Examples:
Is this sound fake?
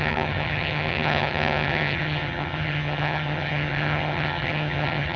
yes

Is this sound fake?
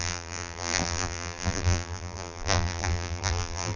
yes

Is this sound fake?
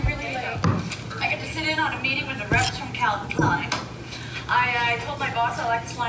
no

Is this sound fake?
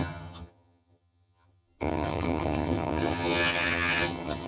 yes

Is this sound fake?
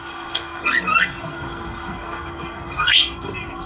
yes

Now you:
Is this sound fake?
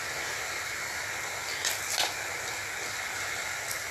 no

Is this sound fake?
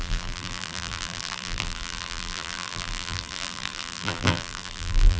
yes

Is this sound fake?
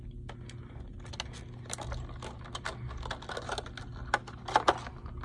no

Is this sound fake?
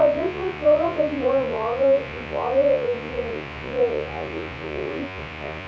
yes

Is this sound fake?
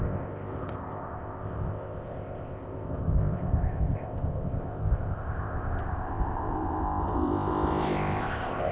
yes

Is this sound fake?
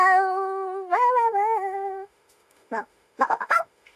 yes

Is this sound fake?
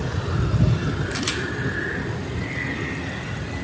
no